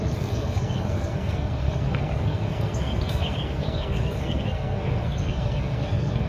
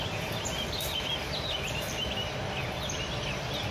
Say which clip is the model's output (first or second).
first